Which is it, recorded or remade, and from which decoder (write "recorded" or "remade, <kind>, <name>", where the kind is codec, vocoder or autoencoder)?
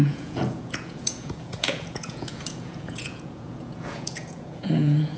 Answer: remade, vocoder, Vocos